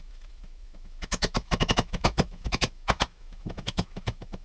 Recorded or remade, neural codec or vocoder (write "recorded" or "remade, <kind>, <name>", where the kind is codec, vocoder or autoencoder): remade, autoencoder, DAC-VAE